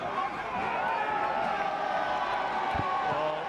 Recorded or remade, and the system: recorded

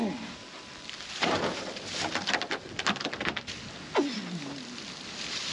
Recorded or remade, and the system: recorded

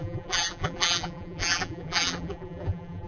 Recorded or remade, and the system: remade, vocoder, BigVGAN v2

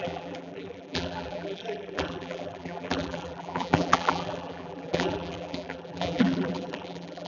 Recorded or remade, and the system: remade, vocoder, BigVGAN v2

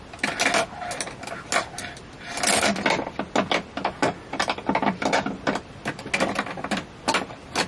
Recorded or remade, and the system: recorded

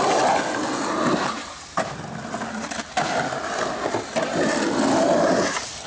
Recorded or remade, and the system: recorded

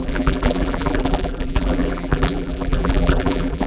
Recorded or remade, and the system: remade, vocoder, BigVGAN v2